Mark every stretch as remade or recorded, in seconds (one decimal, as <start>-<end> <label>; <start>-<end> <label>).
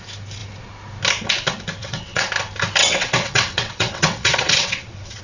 0.0-1.8 recorded; 1.8-2.3 remade; 2.3-2.8 recorded; 2.8-5.2 remade